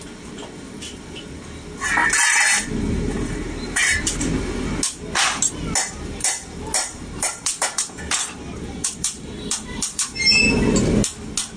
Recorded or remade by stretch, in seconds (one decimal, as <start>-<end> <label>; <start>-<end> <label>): 0.0-2.0 recorded; 2.0-4.1 remade; 4.1-6.8 recorded; 6.8-10.4 remade; 10.4-11.6 recorded